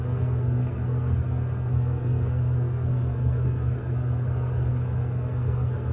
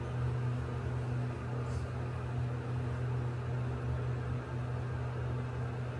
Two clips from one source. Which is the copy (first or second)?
first